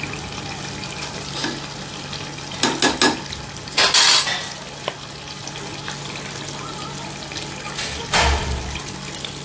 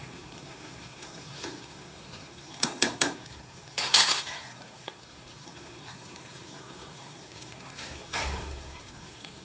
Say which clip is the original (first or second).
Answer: first